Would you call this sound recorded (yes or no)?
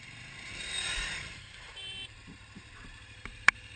no